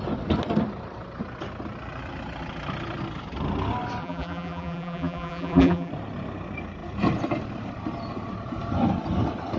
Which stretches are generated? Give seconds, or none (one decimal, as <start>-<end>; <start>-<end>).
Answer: 4.0-5.9